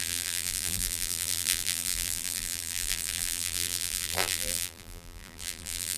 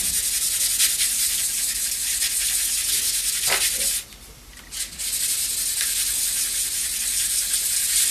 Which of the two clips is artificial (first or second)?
first